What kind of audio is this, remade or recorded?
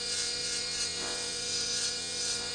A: remade